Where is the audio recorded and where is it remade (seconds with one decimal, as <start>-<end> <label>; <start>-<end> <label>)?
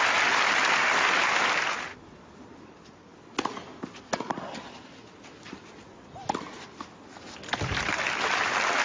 0.0-8.8 recorded